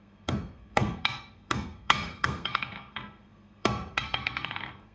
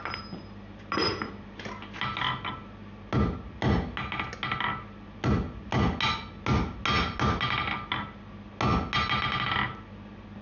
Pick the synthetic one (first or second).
first